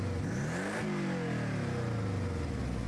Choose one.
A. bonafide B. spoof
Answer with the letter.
A